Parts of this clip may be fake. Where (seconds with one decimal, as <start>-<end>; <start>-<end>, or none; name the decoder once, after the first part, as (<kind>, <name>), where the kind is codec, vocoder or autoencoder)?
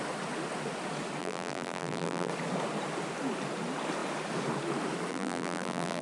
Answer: 1.2-2.3 (vocoder, BigVGAN v2); 5.1-6.0